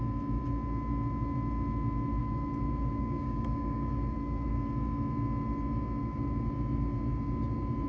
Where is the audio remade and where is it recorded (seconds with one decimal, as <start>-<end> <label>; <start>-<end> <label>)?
0.0-2.2 recorded; 2.2-4.5 remade; 4.5-6.0 recorded; 6.0-6.5 remade; 6.5-7.9 recorded